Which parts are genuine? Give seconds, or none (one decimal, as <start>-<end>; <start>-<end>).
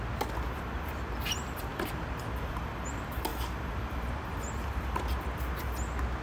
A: 0.0-6.2